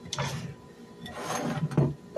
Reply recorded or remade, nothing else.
recorded